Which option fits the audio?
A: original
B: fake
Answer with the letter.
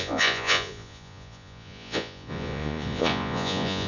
B